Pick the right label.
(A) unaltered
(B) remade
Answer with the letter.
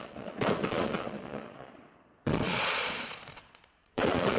B